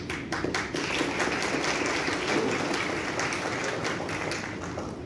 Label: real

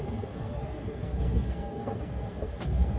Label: fake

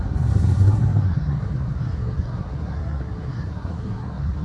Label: fake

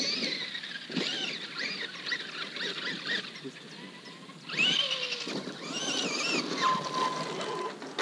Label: real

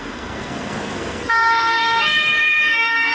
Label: fake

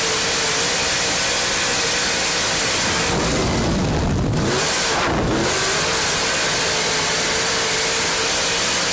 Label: real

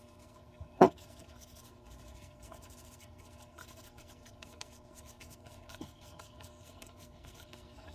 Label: fake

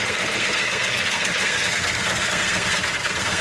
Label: fake